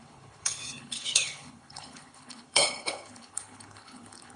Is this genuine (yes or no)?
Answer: no